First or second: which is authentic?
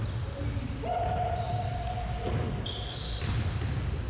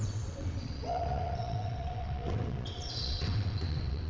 first